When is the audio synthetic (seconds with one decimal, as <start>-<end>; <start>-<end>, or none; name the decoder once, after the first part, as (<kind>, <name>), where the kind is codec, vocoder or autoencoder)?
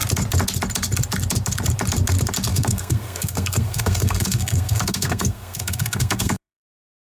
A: 2.5-7.0 (codec, SNAC)